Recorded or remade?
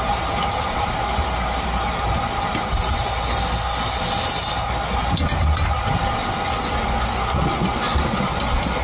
recorded